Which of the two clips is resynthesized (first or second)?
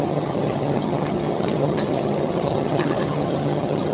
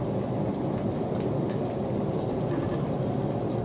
first